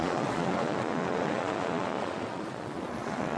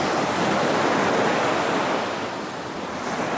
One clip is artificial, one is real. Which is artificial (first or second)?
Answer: first